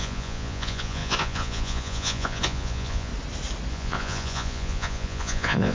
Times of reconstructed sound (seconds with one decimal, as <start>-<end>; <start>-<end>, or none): 0.0-3.1; 3.7-5.7